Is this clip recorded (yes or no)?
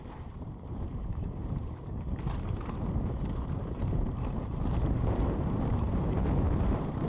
no